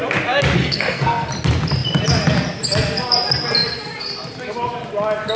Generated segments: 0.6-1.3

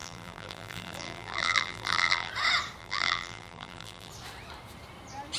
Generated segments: 0.0-2.3; 2.8-4.1

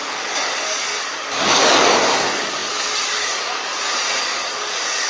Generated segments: 0.0-3.7; 4.2-5.1

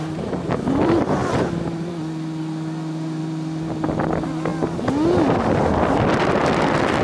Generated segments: 0.0-1.2; 3.2-4.5; 5.6-7.0

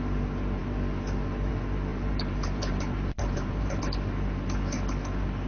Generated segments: 1.9-3.8

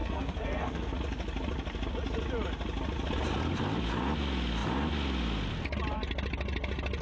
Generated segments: 0.0-0.9

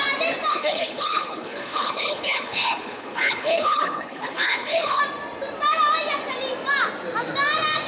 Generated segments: 0.5-5.0